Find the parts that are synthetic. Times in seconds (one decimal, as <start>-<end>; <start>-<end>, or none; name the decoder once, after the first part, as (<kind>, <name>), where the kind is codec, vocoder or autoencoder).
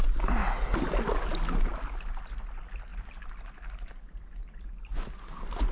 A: none